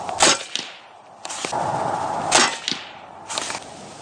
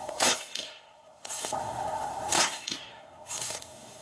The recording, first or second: first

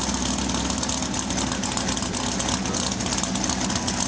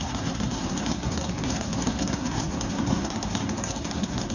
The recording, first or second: first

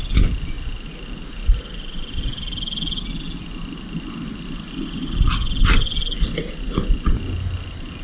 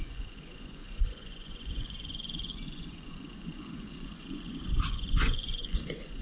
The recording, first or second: first